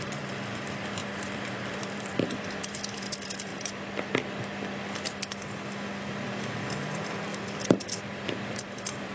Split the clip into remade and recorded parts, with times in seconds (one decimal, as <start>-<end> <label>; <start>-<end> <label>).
0.0-3.5 remade; 3.5-6.8 recorded; 6.8-9.1 remade